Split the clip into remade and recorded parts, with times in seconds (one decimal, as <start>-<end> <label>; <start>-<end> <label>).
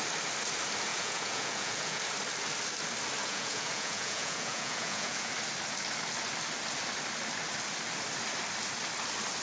0.0-0.9 recorded; 0.9-2.0 remade; 2.0-3.2 recorded; 3.2-5.3 remade; 5.3-9.4 recorded